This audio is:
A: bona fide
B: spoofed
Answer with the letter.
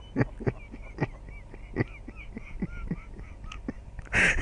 A